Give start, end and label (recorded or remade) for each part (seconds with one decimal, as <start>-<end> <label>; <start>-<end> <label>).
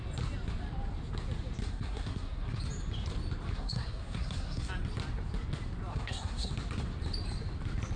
0.0-1.6 recorded; 1.6-2.6 remade; 2.6-3.5 recorded; 3.5-4.7 remade; 4.7-5.9 recorded; 5.9-6.5 remade; 6.5-8.0 recorded